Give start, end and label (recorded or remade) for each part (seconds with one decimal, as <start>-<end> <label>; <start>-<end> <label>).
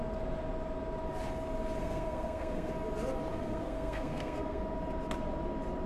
0.0-1.8 recorded; 1.8-2.7 remade; 2.7-3.3 recorded; 3.3-4.6 remade; 4.6-5.9 recorded